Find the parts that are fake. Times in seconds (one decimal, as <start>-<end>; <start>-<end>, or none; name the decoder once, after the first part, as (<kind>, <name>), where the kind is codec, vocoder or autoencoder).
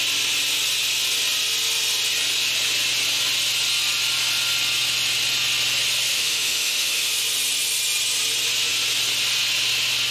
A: 6.1-7.1 (autoencoder, DAC-VAE)